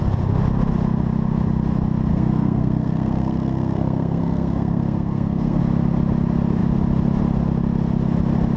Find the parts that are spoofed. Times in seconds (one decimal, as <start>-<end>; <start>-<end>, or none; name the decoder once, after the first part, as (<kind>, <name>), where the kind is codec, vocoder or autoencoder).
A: 2.1-5.6 (codec, SNAC)